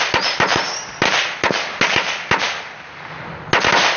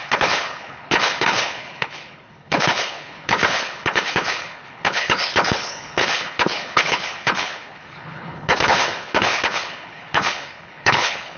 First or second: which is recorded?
first